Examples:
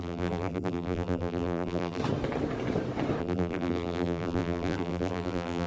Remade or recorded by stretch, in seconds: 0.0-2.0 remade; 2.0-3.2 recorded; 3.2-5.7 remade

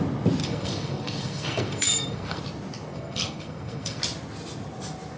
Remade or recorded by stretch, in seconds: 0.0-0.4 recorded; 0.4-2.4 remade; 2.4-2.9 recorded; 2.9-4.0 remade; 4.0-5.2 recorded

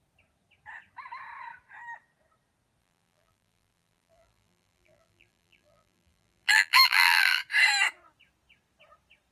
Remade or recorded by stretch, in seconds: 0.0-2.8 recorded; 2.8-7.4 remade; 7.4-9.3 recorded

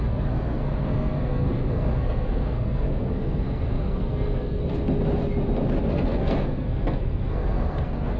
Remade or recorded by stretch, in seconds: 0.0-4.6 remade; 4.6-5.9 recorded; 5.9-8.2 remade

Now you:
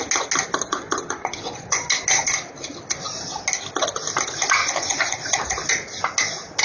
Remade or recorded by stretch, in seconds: 0.0-0.7 recorded; 0.7-1.9 remade; 1.9-4.6 recorded; 4.6-5.4 remade; 5.4-6.6 recorded

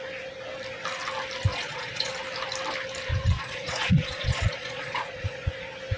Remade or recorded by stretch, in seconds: 0.0-1.5 recorded; 1.5-2.1 remade; 2.1-3.1 recorded; 3.1-5.5 remade; 5.5-6.0 recorded